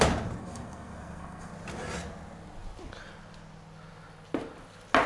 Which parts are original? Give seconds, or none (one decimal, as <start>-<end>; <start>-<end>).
0.0-0.4; 1.5-5.1